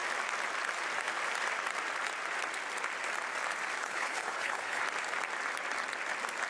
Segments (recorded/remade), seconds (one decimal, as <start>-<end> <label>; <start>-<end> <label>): 0.0-3.8 recorded; 3.8-4.8 remade; 4.8-6.5 recorded